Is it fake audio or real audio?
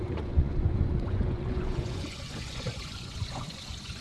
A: fake